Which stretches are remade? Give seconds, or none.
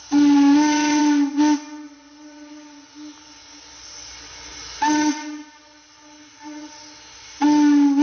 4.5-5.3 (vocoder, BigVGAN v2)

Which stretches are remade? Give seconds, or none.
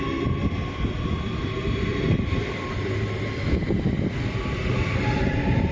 none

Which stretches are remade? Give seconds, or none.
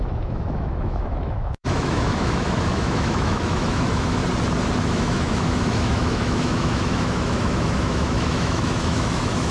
0.0-4.2 (autoencoder, DAC-VAE); 4.8-9.5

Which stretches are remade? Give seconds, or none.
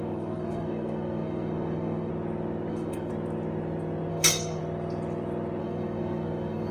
0.0-2.1 (codec, SNAC); 2.7-3.1; 4.1-4.6; 5.6-6.7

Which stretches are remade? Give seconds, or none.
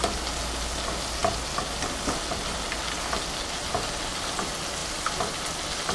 4.8-5.3 (vocoder, BigVGAN v2)